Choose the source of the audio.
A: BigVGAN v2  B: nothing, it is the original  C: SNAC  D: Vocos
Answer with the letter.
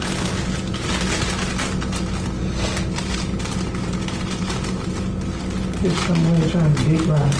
B